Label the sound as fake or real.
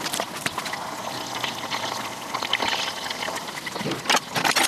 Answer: real